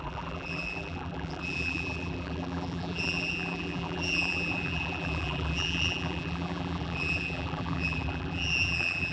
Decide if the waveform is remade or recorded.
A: remade